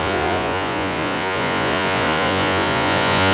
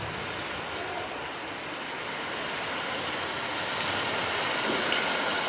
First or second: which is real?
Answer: second